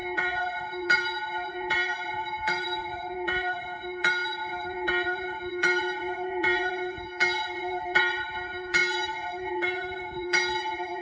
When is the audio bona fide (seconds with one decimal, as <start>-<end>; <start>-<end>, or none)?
none